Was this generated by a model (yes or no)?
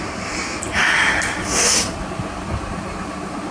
no